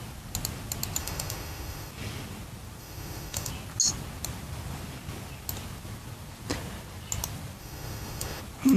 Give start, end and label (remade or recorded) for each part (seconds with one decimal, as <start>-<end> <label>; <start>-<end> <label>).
0.0-1.0 recorded; 1.0-1.9 remade; 1.9-2.8 recorded; 2.8-3.5 remade; 3.5-7.6 recorded; 7.6-8.4 remade; 8.4-8.8 recorded